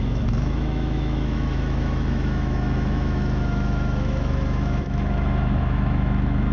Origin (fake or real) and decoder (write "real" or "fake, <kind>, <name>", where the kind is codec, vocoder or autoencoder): fake, autoencoder, DAC-VAE